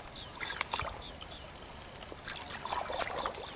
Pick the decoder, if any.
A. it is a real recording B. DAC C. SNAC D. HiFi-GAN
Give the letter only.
A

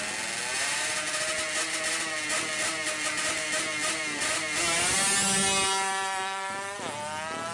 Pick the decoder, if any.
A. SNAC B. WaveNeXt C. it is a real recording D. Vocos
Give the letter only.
C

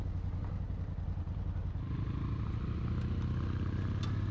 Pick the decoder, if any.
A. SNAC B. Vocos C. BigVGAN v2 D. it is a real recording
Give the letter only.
D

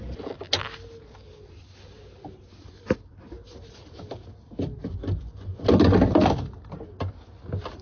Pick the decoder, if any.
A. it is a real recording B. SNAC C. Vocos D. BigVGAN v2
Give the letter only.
A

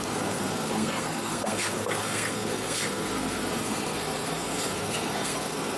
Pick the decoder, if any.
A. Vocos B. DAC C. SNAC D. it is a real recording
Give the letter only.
C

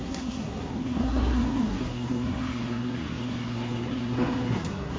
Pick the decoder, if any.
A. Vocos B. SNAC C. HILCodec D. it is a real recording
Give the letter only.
B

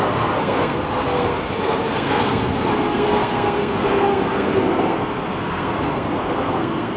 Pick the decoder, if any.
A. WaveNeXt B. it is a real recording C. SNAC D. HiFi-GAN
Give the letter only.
C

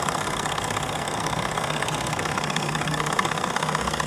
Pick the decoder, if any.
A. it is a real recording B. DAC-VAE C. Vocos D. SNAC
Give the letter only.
D